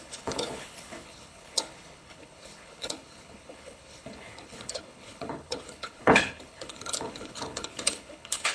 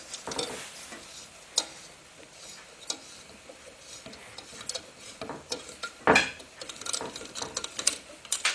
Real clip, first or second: second